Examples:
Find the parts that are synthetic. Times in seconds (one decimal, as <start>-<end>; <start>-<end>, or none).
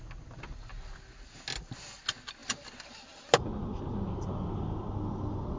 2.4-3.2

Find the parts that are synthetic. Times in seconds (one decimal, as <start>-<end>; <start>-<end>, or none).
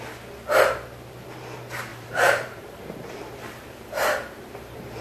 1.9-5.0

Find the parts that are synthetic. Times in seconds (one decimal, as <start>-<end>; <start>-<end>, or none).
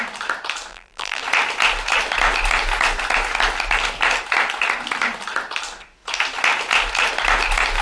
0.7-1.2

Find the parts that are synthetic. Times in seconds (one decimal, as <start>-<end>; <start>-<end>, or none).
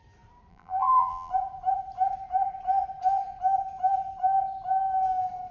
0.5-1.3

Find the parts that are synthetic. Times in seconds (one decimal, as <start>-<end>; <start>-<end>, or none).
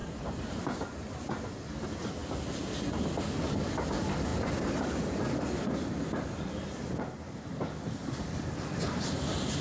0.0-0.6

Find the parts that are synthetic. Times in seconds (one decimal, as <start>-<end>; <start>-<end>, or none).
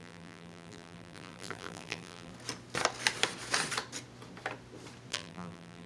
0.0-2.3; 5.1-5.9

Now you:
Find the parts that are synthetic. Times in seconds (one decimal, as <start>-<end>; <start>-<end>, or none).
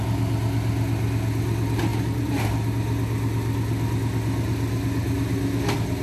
none